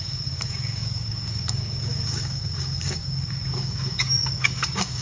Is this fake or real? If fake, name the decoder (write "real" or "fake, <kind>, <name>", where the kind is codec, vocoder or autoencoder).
fake, codec, DAC